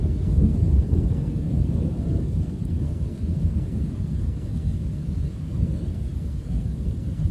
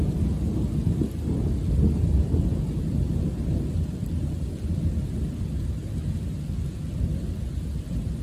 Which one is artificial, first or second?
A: first